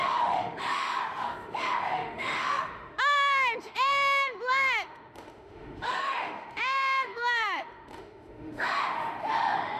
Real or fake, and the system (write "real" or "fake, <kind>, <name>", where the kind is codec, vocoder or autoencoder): fake, autoencoder, DAC-VAE